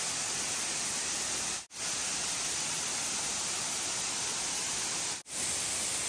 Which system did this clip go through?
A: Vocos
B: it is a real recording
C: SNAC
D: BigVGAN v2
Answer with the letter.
B